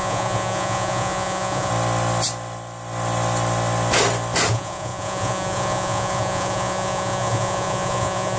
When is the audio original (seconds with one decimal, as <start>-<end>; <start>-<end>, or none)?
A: 1.7-4.5